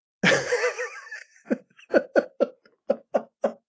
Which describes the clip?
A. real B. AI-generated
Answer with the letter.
A